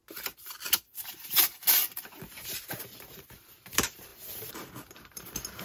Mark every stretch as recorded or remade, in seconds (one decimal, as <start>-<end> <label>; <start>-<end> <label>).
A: 0.0-0.8 recorded; 0.8-1.8 remade; 1.8-2.3 recorded; 2.3-5.6 remade